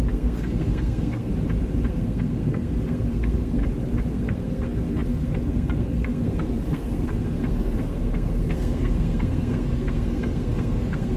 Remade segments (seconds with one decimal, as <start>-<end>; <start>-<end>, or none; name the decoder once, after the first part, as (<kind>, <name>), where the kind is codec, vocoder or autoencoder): 0.0-1.3 (codec, SNAC); 1.9-3.6; 4.1-11.2